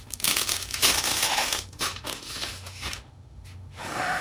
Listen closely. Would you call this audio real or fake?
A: fake